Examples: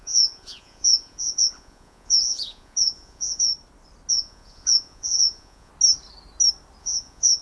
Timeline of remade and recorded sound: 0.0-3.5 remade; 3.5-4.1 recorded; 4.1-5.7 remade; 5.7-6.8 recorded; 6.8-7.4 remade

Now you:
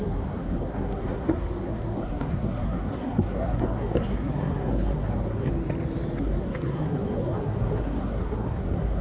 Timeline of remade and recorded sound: 0.0-5.5 remade; 5.5-6.2 recorded; 6.2-9.0 remade

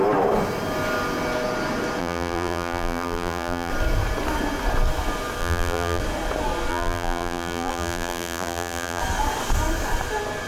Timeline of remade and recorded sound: 0.0-2.0 recorded; 2.0-3.7 remade; 3.7-5.4 recorded; 5.4-6.0 remade; 6.0-6.7 recorded; 6.7-9.0 remade; 9.0-10.5 recorded